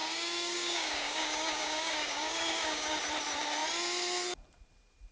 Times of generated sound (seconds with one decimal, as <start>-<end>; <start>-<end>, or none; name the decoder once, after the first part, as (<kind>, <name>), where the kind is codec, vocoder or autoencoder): 0.0-3.0 (codec, DAC)